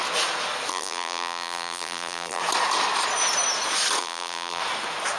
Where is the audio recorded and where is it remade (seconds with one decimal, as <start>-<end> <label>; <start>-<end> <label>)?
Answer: 0.0-0.7 recorded; 0.7-2.4 remade; 2.4-4.0 recorded; 4.0-4.6 remade; 4.6-5.2 recorded